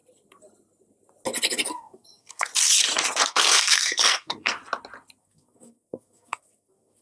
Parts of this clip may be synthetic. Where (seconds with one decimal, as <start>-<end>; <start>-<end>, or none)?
1.7-2.5; 3.2-4.6; 5.2-7.0